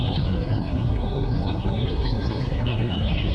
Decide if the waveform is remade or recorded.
remade